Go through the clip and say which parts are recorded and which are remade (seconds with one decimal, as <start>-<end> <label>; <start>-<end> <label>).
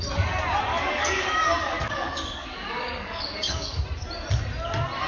0.0-0.7 recorded; 0.7-3.8 remade; 3.8-5.1 recorded